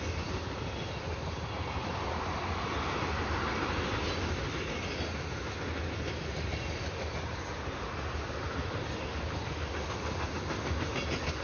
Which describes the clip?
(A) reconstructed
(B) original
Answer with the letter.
B